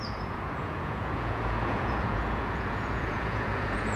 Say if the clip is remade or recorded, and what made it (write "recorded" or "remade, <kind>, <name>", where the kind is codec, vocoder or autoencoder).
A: remade, vocoder, Vocos